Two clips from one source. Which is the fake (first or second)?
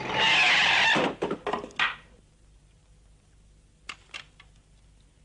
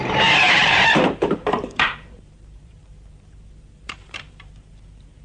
second